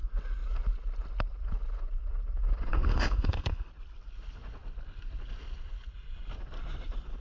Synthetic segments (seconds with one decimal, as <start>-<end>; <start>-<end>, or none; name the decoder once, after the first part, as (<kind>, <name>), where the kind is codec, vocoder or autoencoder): 2.7-3.7 (codec, SNAC)